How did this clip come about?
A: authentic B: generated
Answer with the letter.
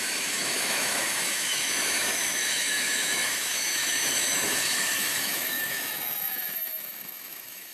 B